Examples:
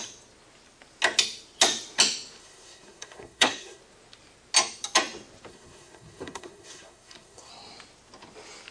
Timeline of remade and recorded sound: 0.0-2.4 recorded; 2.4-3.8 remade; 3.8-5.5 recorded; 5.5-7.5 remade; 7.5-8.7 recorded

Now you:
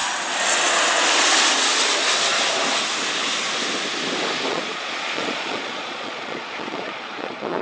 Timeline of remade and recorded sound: 0.0-4.5 recorded; 4.5-7.6 remade

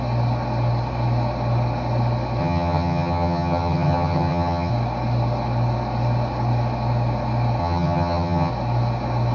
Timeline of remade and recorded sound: 0.0-2.4 recorded; 2.4-4.7 remade; 4.7-7.6 recorded; 7.6-8.5 remade; 8.5-9.3 recorded

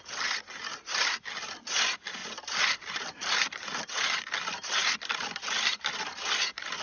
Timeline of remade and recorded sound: 0.0-2.2 recorded; 2.2-3.8 remade; 3.8-4.8 recorded; 4.8-5.9 remade; 5.9-6.8 recorded